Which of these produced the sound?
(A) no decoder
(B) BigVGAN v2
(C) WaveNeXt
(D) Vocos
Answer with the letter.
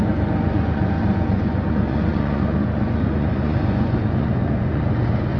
D